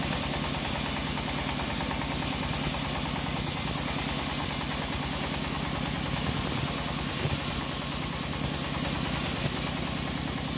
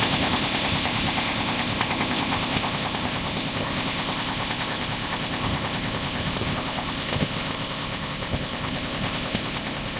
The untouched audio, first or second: first